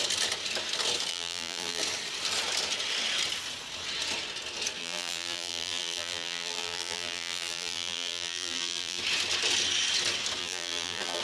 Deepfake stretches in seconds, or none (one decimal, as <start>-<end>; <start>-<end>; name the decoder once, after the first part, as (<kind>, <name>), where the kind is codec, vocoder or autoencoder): 1.1-1.8 (vocoder, BigVGAN v2); 4.8-9.0; 10.4-11.2